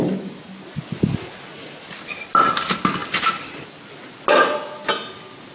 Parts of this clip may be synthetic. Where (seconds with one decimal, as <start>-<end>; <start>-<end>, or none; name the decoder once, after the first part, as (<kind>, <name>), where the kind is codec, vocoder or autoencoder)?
none